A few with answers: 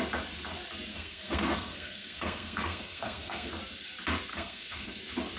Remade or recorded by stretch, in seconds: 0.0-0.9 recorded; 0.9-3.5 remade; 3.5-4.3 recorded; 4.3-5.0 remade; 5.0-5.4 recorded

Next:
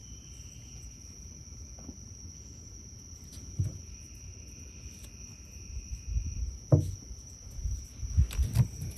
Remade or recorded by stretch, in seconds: 0.0-9.0 recorded